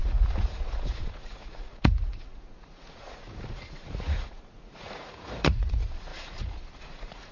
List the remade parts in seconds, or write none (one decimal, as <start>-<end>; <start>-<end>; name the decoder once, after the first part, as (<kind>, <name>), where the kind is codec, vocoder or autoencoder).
0.0-7.3 (vocoder, Vocos)